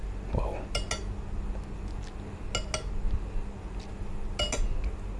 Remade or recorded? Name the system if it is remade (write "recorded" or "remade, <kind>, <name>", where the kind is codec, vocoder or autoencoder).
recorded